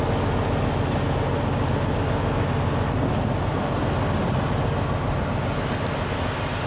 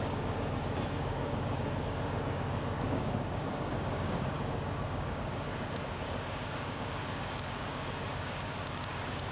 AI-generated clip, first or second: second